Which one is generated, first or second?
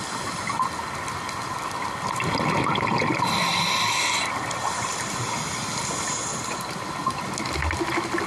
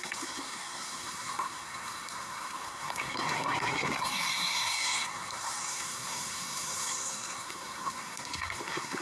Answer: second